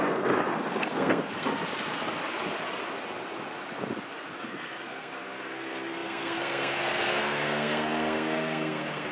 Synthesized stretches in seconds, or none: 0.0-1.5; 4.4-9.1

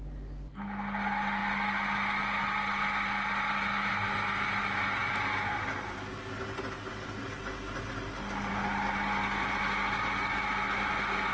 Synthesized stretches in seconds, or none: none

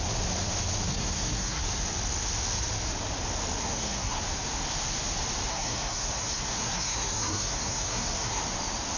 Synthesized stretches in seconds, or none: 0.9-1.6; 3.6-4.2; 5.5-8.4

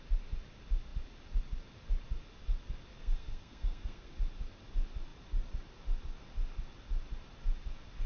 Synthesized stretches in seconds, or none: 3.0-4.1